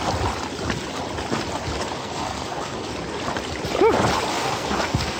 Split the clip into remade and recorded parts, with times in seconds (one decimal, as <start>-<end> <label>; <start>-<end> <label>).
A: 0.0-2.0 recorded; 2.0-2.9 remade; 2.9-4.3 recorded; 4.3-5.2 remade